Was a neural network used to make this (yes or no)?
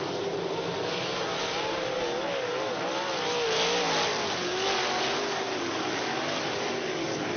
no